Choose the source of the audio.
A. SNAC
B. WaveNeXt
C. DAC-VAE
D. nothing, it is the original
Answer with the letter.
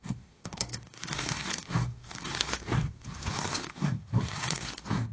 A